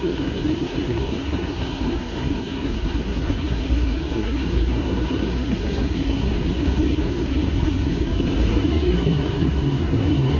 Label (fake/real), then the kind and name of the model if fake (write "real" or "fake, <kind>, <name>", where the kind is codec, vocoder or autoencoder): fake, codec, SNAC